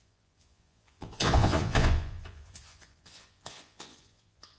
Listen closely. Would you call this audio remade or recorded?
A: remade